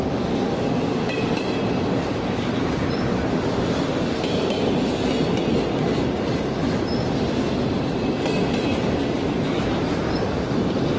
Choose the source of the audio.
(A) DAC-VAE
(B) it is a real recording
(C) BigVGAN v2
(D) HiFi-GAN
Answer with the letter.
B